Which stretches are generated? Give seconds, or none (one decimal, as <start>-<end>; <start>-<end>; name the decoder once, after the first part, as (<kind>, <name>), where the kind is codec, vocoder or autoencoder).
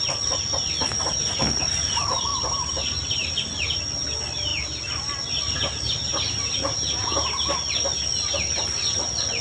2.3-3.3 (vocoder, BigVGAN v2)